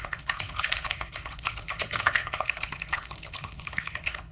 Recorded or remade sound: remade